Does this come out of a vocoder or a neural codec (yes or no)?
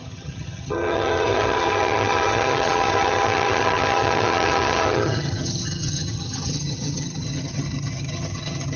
yes